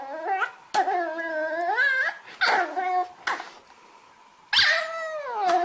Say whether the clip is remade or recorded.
recorded